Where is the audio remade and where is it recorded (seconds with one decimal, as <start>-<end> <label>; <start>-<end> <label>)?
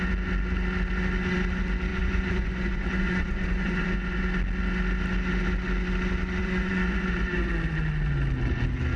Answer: 0.0-1.9 recorded; 1.9-4.2 remade; 4.2-6.4 recorded; 6.4-7.5 remade; 7.5-9.0 recorded